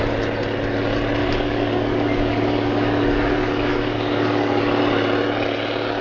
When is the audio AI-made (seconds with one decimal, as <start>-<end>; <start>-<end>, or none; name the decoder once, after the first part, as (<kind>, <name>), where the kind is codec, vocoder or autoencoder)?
1.2-4.8 (codec, DAC)